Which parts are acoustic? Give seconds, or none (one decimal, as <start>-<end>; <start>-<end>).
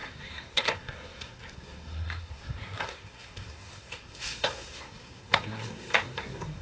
none